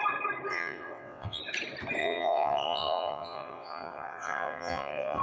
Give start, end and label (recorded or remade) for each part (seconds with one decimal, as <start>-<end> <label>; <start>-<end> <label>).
0.0-0.5 recorded; 0.5-1.4 remade; 1.4-2.0 recorded; 2.0-5.2 remade